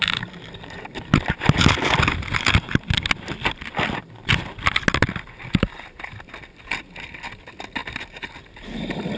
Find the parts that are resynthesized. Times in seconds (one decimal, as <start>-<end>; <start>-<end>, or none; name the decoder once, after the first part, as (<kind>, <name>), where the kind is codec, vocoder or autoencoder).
none